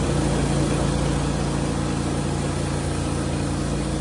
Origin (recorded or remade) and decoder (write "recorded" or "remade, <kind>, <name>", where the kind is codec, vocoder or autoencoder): recorded